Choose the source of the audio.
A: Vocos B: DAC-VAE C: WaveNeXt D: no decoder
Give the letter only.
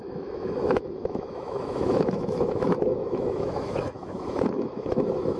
B